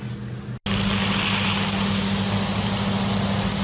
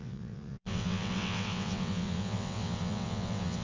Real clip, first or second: first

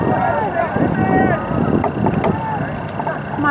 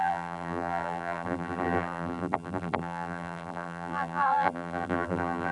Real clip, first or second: first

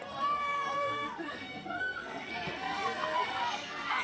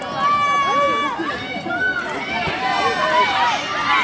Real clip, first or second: second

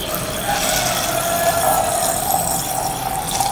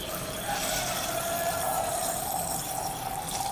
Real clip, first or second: first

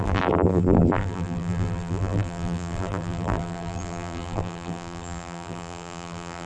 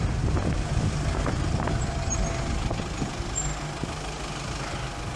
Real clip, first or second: second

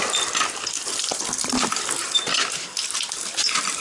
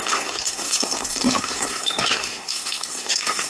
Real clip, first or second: first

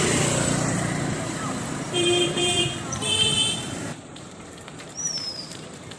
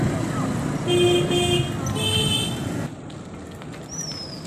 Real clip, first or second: second